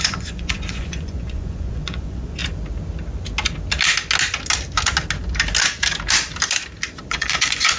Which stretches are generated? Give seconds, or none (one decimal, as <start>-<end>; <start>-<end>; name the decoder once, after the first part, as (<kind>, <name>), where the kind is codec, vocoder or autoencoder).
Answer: 0.0-2.4 (vocoder, Vocos); 7.1-7.8